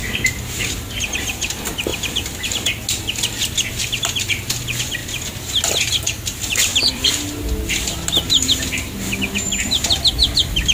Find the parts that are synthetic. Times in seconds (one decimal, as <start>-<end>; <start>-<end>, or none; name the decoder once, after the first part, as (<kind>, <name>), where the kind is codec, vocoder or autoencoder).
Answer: 6.7-8.5 (vocoder, BigVGAN v2)